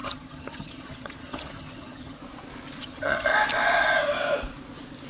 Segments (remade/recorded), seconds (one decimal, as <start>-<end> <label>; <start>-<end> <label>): 0.0-2.2 remade; 2.2-2.8 recorded; 2.8-3.3 remade; 3.3-5.1 recorded